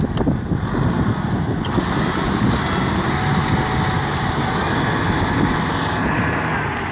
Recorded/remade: recorded